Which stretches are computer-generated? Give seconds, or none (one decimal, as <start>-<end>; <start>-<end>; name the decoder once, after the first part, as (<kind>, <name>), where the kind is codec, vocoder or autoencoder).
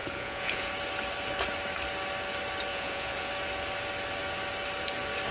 0.0-0.7 (vocoder, Vocos); 2.7-3.3